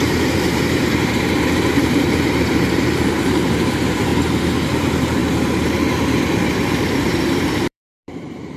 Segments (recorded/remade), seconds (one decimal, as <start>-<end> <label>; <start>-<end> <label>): 0.0-4.1 remade; 4.1-4.7 recorded; 4.7-5.2 remade; 5.2-6.9 recorded; 6.9-8.6 remade